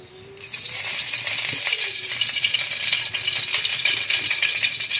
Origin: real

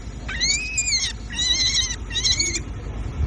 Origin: real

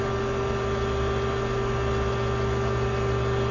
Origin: real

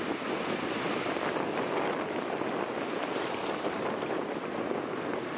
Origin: real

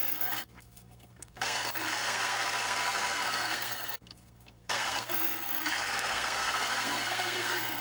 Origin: fake